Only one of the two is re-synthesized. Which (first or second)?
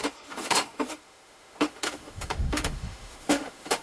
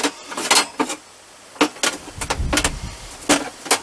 first